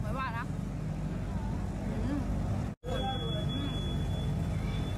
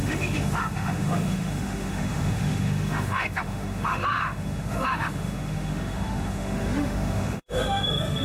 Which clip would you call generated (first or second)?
second